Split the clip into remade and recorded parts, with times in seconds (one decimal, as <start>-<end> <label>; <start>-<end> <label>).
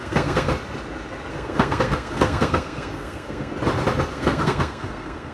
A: 0.0-0.5 remade; 0.5-1.3 recorded; 1.3-3.5 remade; 3.5-4.1 recorded; 4.1-5.3 remade